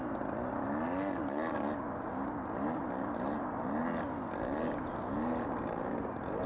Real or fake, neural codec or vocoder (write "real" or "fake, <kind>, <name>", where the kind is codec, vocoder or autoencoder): real